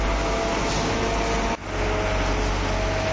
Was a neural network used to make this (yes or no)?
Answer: no